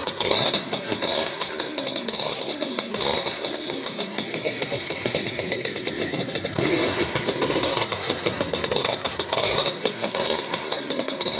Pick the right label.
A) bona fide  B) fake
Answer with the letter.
B